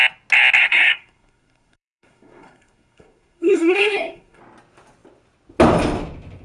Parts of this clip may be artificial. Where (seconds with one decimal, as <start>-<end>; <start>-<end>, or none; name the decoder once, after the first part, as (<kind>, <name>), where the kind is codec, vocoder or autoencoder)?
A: 0.6-4.4 (codec, SNAC)